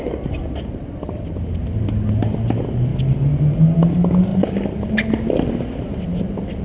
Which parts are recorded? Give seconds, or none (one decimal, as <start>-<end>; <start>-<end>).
0.0-6.6